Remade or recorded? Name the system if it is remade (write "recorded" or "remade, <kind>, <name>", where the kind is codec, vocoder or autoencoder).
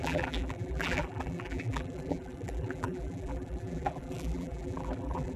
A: remade, vocoder, BigVGAN v2